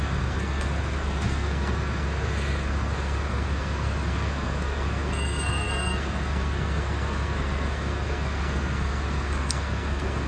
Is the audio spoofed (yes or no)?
yes